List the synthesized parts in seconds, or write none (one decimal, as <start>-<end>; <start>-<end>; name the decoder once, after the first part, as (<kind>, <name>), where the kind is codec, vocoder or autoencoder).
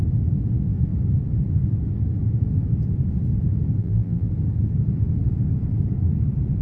3.8-4.3 (vocoder, BigVGAN v2)